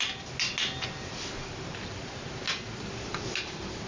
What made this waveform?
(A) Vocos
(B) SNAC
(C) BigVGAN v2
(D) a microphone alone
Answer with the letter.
D